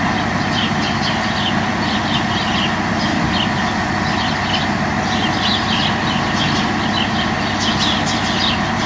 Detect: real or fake real